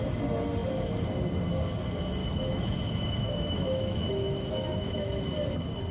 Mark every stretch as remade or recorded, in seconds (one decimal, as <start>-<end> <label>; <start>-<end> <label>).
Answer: 0.0-2.2 recorded; 2.2-5.2 remade; 5.2-5.9 recorded